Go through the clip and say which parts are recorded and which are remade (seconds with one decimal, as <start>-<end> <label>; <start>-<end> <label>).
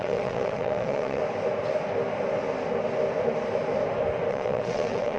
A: 0.0-1.2 remade; 1.2-4.3 recorded; 4.3-5.2 remade